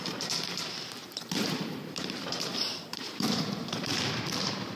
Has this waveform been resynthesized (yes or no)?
yes